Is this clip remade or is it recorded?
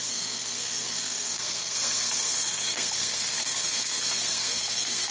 remade